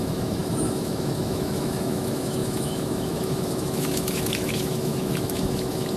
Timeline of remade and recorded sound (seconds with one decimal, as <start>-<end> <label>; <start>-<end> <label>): 0.0-6.0 remade